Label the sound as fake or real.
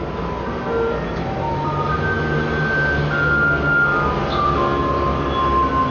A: real